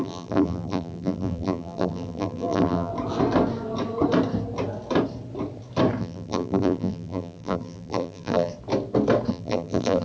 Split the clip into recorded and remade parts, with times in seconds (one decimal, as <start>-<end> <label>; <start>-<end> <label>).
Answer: 0.0-2.9 remade; 2.9-6.0 recorded; 6.0-8.5 remade; 8.5-9.3 recorded; 9.3-10.0 remade

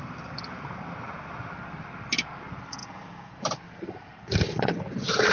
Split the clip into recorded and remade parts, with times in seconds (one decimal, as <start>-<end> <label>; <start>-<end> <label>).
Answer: 0.0-2.8 recorded; 2.8-3.4 remade; 3.4-5.3 recorded

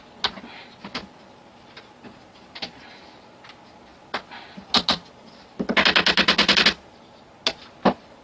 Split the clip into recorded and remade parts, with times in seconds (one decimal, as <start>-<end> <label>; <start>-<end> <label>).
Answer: 0.0-8.2 recorded

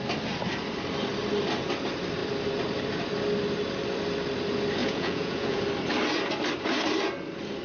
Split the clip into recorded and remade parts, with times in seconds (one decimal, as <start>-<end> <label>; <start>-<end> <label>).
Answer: 0.0-4.8 recorded; 4.8-5.6 remade; 5.6-7.6 recorded

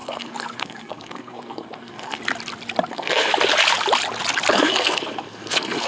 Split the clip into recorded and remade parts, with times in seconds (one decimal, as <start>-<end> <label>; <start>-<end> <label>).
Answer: 0.0-2.2 remade; 2.2-2.9 recorded; 2.9-3.3 remade; 3.3-4.5 recorded; 4.5-5.9 remade